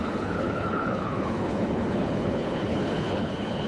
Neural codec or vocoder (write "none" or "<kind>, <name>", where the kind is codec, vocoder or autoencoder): codec, HILCodec